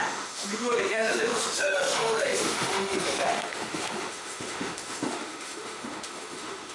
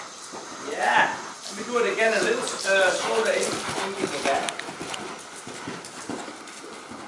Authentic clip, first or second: second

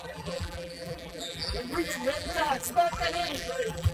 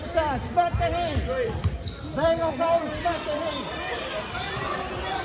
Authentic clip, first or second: second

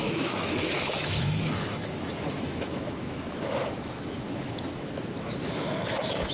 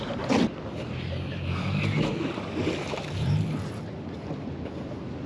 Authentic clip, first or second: second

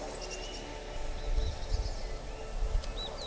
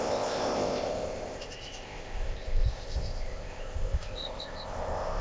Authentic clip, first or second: first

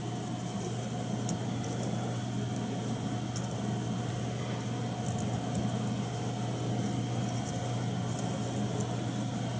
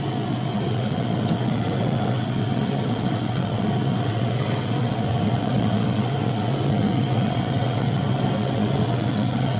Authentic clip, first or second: first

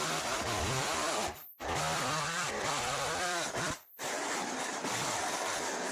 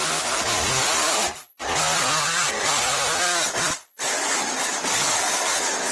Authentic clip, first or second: second